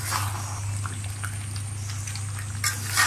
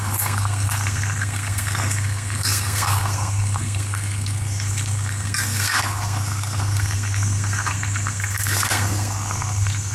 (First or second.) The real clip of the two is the first